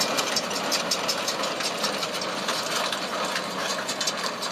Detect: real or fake real